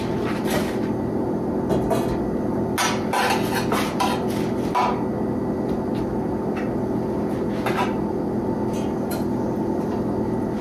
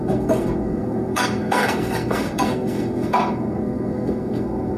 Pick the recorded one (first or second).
first